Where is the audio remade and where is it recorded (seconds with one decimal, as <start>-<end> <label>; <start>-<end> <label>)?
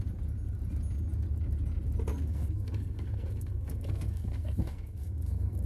0.0-2.1 recorded; 2.1-5.7 remade